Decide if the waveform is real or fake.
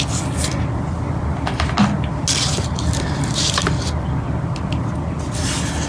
real